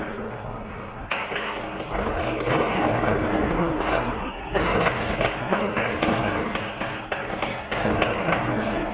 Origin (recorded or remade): remade